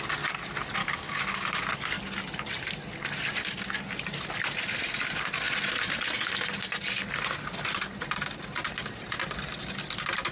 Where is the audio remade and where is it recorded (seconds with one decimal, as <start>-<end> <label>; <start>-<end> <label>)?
0.0-0.8 recorded; 0.8-1.5 remade; 1.5-10.3 recorded